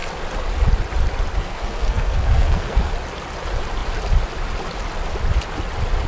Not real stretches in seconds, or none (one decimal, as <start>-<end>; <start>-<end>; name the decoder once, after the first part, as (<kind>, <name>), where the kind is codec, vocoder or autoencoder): 1.3-2.9 (codec, SNAC)